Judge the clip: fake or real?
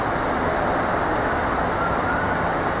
real